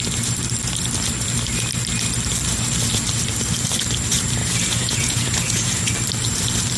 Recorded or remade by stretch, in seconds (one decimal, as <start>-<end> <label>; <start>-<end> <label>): 0.0-4.4 recorded; 4.4-5.9 remade; 5.9-6.8 recorded